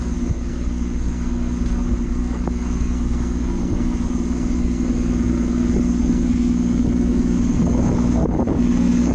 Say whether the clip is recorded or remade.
remade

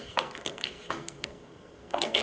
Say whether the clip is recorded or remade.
remade